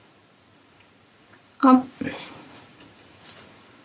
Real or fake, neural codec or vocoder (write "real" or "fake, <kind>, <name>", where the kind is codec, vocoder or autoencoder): fake, vocoder, Vocos